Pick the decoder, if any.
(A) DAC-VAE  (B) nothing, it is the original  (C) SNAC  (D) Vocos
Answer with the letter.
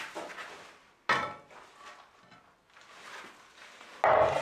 B